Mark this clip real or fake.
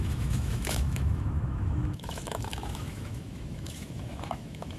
fake